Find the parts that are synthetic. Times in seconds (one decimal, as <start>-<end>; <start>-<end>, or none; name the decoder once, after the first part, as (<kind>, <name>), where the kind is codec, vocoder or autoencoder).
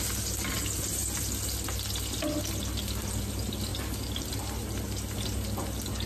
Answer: none